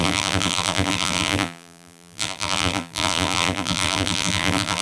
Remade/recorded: remade